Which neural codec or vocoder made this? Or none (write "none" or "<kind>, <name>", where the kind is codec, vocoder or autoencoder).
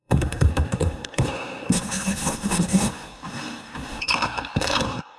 codec, SNAC